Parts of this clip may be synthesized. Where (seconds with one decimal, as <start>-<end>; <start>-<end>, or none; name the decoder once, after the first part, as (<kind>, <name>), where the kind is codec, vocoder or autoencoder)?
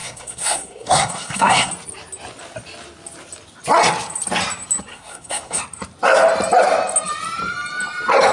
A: 0.0-1.7 (codec, SNAC); 4.9-5.6